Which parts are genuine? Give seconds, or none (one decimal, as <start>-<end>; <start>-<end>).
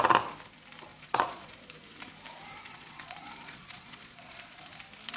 0.0-0.9; 1.5-2.7; 4.8-5.2